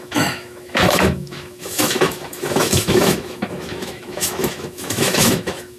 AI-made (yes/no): yes